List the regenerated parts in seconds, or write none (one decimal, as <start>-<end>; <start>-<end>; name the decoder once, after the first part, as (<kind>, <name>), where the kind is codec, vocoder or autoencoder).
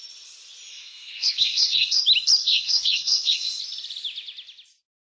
0.7-2.0 (codec, SNAC); 2.4-3.6